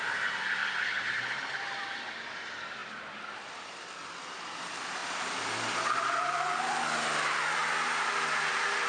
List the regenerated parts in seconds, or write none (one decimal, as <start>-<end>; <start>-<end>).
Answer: 0.6-2.4; 2.8-3.9